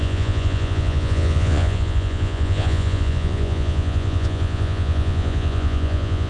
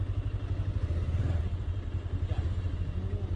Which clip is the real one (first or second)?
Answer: second